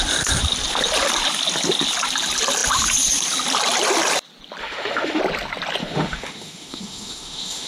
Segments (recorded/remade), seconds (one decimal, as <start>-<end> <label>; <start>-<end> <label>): 0.0-4.6 recorded; 4.6-5.2 remade; 5.2-5.8 recorded; 5.8-7.7 remade